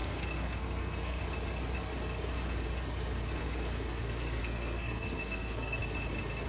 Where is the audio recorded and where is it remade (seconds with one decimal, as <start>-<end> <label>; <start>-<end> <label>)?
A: 0.0-1.2 remade; 1.2-3.4 recorded; 3.4-5.8 remade; 5.8-6.5 recorded